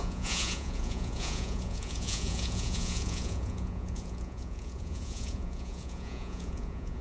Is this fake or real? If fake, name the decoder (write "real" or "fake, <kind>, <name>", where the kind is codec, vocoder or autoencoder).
fake, vocoder, Vocos